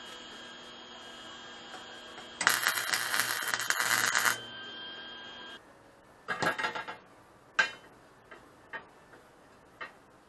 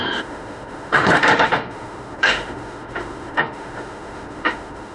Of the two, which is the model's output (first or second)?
second